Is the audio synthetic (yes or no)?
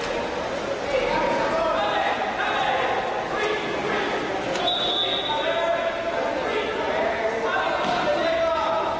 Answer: no